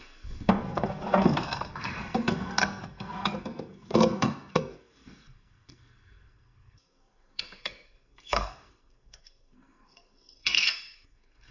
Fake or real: fake